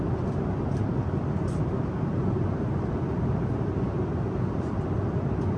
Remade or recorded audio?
recorded